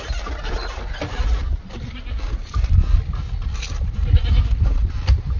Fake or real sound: real